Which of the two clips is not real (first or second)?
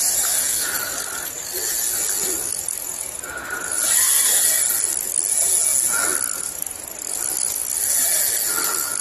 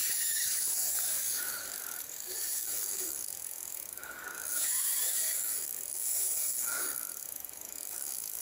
second